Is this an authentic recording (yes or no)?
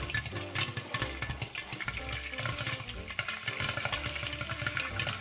yes